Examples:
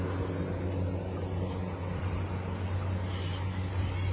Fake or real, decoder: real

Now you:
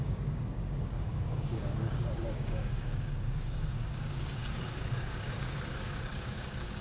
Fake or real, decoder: fake, codec, DAC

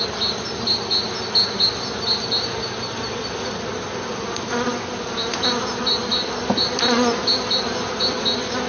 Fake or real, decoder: real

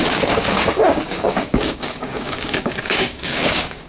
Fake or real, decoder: fake, codec, DAC